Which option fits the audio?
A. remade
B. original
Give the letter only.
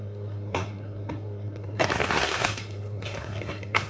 A